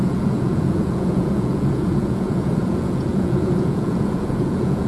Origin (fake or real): fake